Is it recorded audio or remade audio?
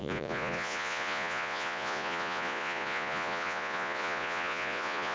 remade